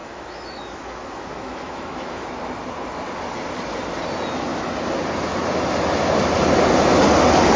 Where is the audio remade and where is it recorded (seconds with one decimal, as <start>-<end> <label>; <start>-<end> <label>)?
0.0-2.3 remade; 2.3-7.6 recorded